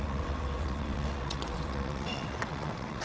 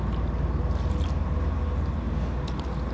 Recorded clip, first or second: second